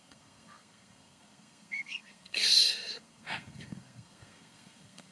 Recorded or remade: remade